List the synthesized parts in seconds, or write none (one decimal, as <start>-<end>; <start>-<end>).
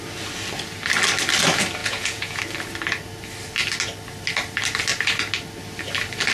1.8-2.4